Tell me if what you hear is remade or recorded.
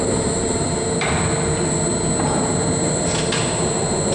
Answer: recorded